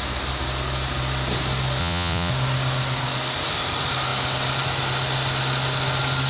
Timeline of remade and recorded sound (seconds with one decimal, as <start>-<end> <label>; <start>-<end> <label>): 0.0-1.8 recorded; 1.8-2.3 remade; 2.3-6.3 recorded